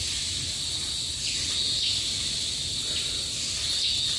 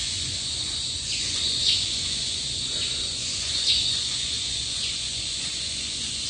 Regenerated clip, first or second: second